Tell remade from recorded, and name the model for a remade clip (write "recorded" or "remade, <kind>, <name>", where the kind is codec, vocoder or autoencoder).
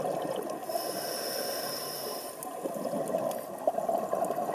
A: recorded